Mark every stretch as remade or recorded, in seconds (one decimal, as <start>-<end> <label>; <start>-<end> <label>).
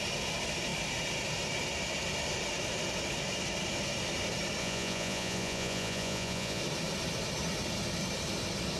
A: 0.0-4.6 recorded; 4.6-6.6 remade; 6.6-8.8 recorded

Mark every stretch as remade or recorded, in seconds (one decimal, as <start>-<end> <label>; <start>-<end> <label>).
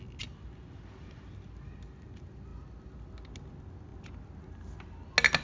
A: 0.0-5.4 recorded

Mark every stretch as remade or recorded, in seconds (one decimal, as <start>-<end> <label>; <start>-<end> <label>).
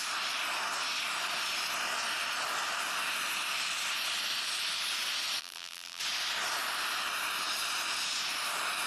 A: 0.0-5.4 recorded; 5.4-6.0 remade; 6.0-8.9 recorded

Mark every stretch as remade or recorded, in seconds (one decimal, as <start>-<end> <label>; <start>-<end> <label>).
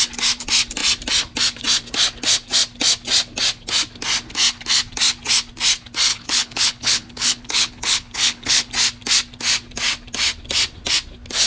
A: 0.0-6.1 recorded; 6.1-8.7 remade; 8.7-11.5 recorded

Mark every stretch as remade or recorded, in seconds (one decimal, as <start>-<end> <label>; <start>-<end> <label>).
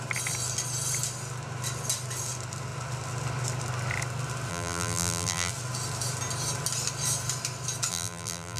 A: 0.0-4.5 recorded; 4.5-5.5 remade; 5.5-7.9 recorded; 7.9-8.6 remade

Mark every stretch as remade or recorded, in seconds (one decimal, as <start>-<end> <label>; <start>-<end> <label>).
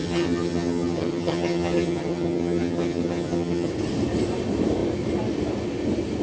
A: 0.0-3.7 remade; 3.7-6.2 recorded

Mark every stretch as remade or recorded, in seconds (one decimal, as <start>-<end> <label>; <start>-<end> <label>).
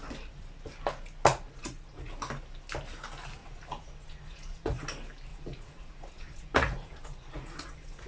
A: 0.0-1.3 recorded; 1.3-2.1 remade; 2.1-3.4 recorded; 3.4-4.8 remade; 4.8-5.3 recorded; 5.3-8.1 remade